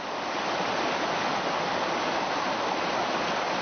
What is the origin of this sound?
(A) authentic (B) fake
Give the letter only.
A